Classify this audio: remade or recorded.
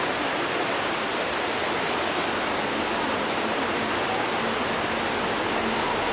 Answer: recorded